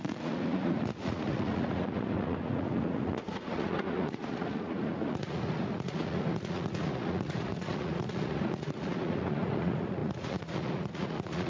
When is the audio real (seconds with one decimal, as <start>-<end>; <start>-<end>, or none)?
none